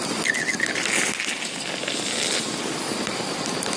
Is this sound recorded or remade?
recorded